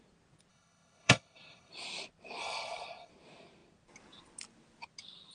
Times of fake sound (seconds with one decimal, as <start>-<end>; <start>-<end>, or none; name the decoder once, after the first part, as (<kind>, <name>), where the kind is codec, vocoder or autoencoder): 0.5-1.7 (codec, HILCodec); 2.4-3.1